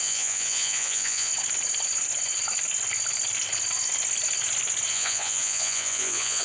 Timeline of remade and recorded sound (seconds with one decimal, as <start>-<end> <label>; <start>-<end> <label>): 0.0-1.3 remade; 1.3-4.9 recorded; 4.9-6.4 remade